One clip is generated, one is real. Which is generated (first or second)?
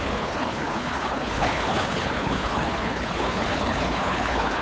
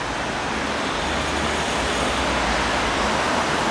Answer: first